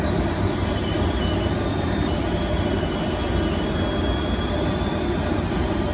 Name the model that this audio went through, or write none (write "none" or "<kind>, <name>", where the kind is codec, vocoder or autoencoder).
none